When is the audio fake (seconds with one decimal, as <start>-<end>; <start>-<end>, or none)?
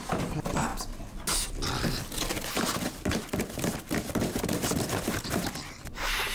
none